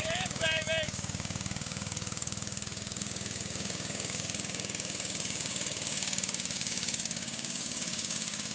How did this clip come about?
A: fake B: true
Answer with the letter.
A